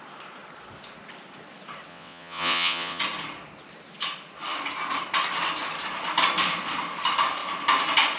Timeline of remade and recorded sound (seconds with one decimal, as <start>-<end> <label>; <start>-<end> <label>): 0.0-1.9 recorded; 1.9-3.0 remade; 3.0-8.2 recorded